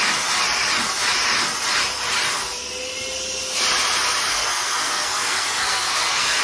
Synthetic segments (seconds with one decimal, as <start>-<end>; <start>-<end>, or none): 4.3-6.4